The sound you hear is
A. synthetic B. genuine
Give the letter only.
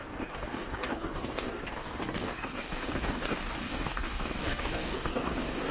A